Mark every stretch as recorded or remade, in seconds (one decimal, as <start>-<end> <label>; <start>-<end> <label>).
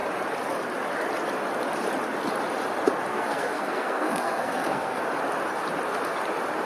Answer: 0.0-3.1 recorded; 3.1-5.0 remade; 5.0-6.7 recorded